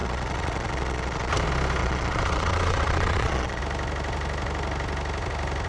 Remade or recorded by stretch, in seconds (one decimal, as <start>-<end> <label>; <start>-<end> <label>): 0.0-1.3 remade; 1.3-1.8 recorded; 1.8-3.6 remade; 3.6-5.7 recorded